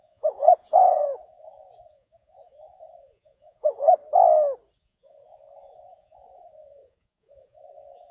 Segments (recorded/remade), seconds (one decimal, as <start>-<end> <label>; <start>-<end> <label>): 0.0-4.0 remade; 4.0-4.8 recorded; 4.8-8.1 remade